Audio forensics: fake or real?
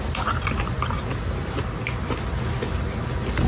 real